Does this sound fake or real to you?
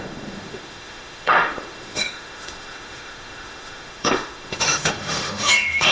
fake